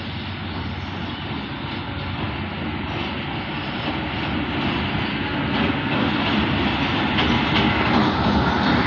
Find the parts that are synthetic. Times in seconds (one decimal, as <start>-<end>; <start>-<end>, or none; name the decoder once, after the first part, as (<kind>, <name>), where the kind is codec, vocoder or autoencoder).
5.1-6.1 (codec, SNAC)